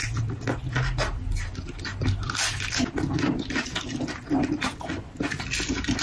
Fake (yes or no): no